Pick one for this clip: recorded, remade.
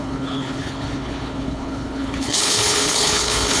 remade